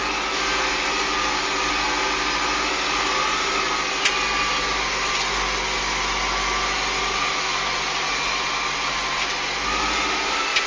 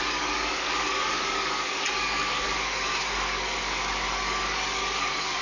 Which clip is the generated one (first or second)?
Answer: second